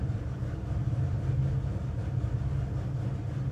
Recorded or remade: recorded